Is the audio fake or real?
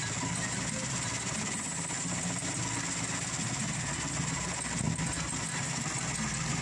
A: real